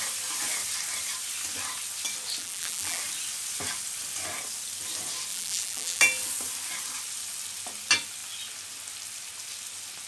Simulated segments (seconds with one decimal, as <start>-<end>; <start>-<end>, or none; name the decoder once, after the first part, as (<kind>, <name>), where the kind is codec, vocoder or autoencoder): 2.4-3.0 (vocoder, BigVGAN v2); 5.3-6.0